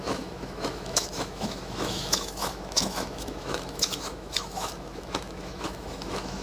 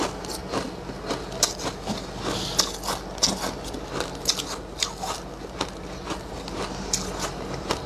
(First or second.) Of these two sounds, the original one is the second